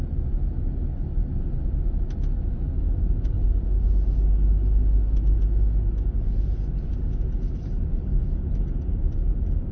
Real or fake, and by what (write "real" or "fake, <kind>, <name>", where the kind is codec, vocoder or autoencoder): real